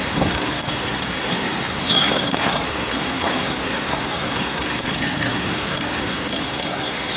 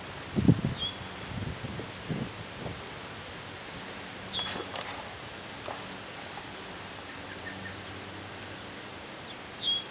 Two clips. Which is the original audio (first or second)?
second